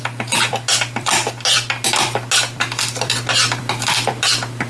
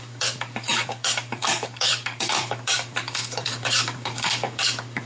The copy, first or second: second